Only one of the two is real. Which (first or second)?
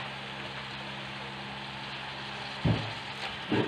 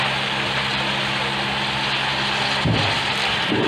first